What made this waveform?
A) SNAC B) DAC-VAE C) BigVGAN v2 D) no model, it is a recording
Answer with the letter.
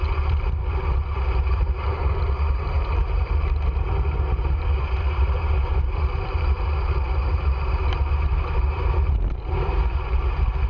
C